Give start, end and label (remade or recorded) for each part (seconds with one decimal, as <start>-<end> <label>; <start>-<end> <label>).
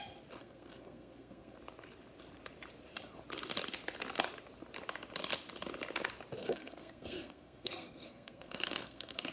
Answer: 0.0-0.4 recorded; 0.4-1.6 remade; 1.6-6.4 recorded; 6.4-9.3 remade